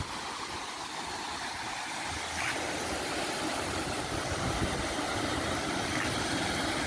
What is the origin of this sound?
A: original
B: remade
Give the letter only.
A